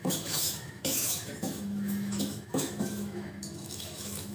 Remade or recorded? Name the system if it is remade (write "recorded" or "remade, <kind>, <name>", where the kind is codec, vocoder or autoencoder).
remade, autoencoder, DAC-VAE